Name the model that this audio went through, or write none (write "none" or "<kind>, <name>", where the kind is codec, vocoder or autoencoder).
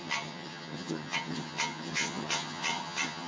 vocoder, HiFi-GAN